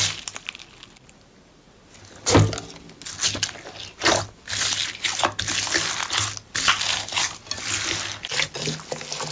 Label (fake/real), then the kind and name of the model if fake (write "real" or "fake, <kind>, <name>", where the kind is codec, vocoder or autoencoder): real